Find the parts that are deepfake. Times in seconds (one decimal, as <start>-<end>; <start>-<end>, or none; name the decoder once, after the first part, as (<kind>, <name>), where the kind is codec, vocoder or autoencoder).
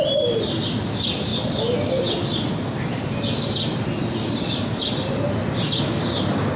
none